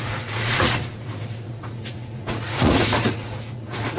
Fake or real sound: fake